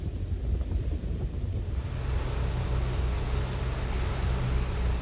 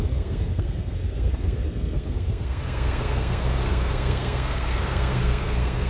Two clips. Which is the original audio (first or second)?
first